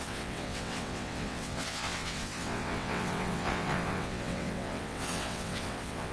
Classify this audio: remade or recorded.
remade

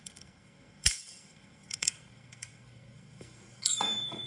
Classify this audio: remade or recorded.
remade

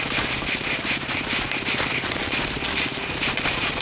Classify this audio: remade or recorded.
remade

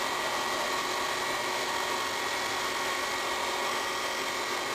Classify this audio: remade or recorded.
remade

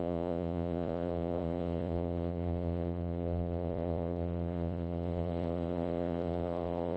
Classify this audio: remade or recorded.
remade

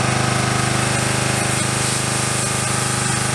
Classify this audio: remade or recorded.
recorded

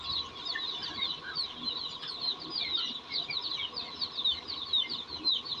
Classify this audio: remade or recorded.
recorded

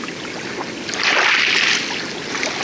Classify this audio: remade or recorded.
recorded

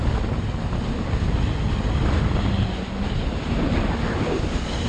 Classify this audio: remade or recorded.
recorded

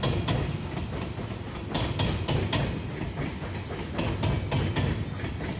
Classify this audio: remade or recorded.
recorded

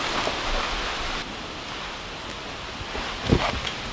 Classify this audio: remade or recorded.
recorded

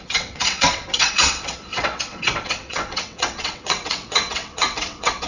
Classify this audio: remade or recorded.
remade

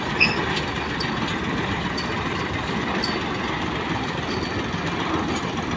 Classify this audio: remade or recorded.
recorded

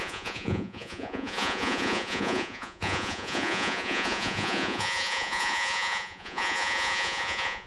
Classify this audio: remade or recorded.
remade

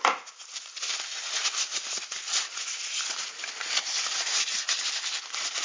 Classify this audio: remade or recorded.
recorded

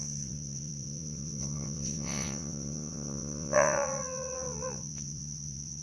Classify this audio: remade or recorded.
remade